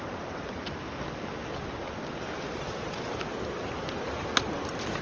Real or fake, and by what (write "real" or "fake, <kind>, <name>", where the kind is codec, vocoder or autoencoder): real